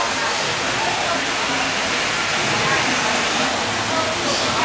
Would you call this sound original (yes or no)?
yes